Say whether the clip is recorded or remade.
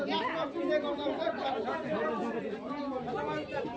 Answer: recorded